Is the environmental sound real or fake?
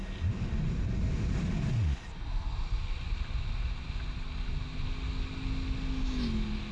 real